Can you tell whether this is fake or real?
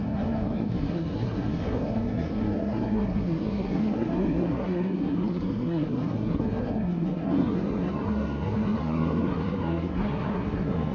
fake